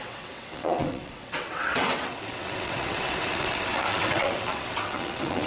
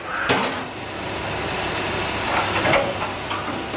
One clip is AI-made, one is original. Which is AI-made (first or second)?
first